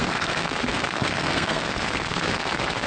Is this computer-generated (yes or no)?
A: yes